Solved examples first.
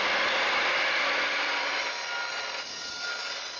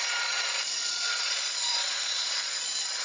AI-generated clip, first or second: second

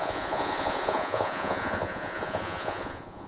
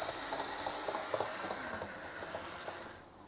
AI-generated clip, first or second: first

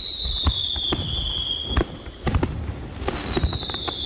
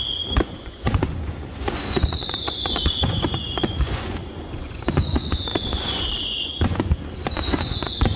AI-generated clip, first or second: second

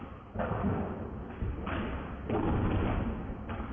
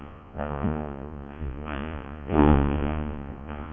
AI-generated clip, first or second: second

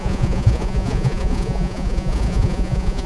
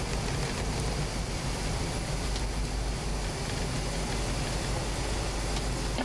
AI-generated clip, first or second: first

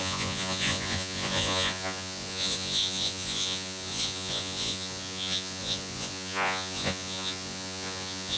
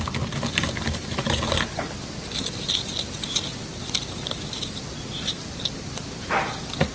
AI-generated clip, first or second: first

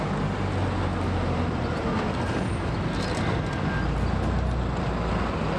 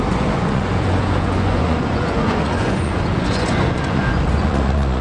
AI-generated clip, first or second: second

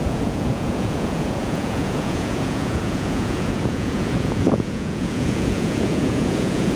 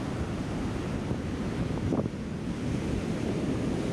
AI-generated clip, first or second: first